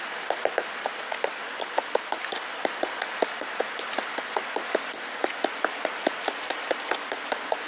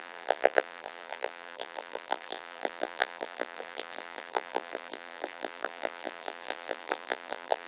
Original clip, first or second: first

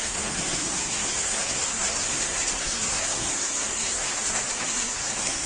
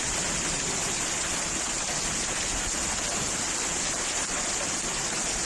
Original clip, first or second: second